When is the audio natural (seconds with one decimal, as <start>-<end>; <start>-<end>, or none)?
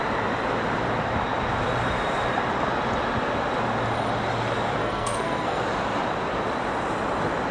0.0-4.8; 5.6-7.5